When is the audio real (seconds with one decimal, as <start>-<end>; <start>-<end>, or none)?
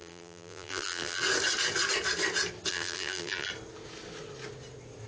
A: 1.2-2.7; 3.5-5.1